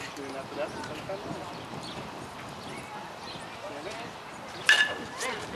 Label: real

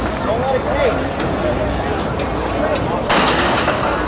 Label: real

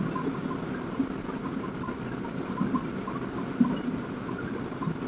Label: real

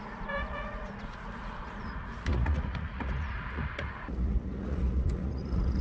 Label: fake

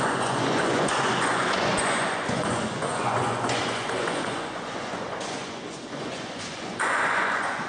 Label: fake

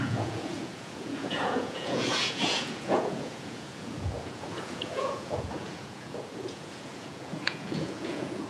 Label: fake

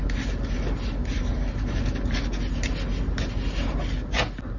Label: real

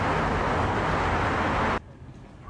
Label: real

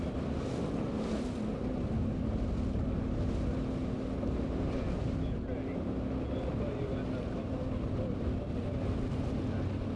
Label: real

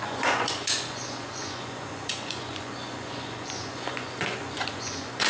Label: fake